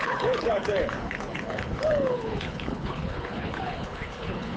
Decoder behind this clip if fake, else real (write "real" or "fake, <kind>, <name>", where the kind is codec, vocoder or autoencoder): fake, codec, HILCodec